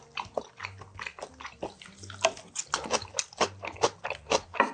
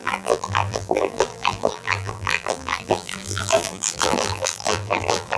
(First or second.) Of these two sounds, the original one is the first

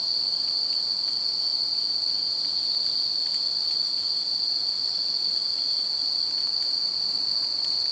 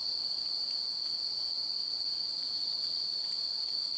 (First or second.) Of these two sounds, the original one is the first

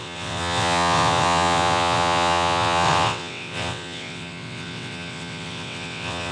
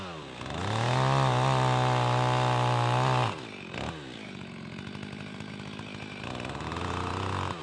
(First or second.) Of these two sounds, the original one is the second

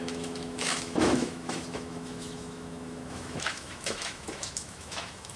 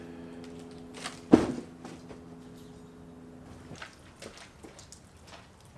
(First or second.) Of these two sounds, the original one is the second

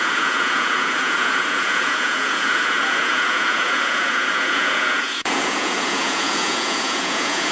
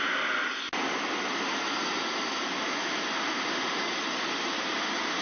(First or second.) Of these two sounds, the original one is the second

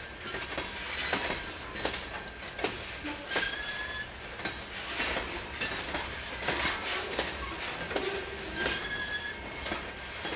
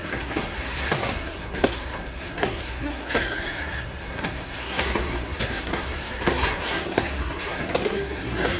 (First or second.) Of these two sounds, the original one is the first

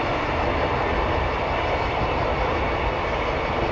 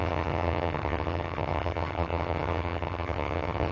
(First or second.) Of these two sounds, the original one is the first